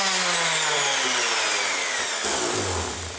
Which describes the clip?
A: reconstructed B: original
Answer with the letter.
B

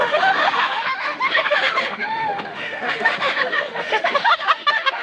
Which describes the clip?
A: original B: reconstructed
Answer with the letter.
B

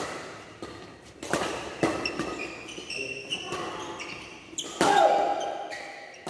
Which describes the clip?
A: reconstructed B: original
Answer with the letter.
B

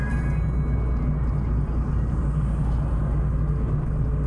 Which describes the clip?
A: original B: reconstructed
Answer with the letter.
A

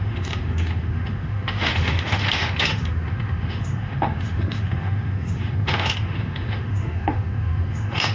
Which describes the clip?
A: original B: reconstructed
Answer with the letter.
B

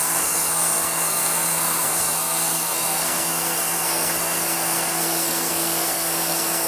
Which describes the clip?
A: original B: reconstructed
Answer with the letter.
B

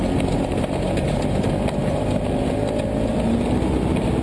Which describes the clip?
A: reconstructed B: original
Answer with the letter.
B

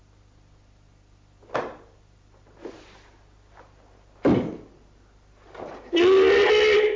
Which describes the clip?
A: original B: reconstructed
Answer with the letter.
A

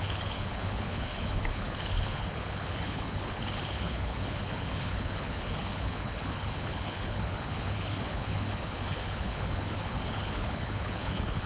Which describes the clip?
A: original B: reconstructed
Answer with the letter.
B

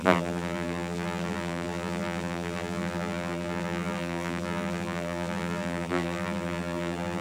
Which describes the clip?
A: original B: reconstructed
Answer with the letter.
B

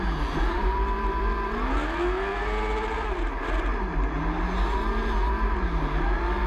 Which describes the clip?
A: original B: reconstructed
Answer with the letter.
A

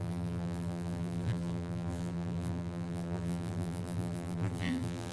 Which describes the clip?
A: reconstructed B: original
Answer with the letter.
A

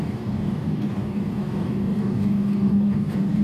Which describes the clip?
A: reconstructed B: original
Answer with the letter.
A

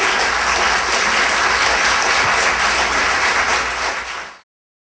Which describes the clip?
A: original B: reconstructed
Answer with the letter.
A